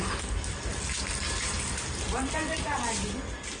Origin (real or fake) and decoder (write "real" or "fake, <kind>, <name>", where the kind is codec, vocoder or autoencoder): real